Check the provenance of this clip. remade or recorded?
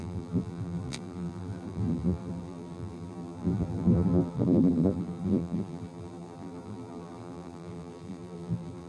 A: remade